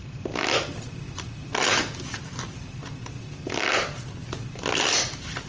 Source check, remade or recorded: recorded